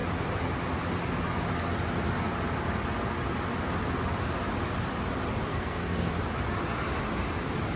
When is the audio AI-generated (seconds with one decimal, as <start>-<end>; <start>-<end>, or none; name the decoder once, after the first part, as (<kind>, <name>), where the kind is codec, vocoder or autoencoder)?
5.5-6.1 (codec, SNAC)